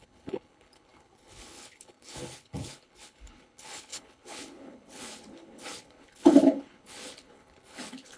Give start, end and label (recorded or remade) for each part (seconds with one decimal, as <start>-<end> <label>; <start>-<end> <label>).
0.0-8.2 remade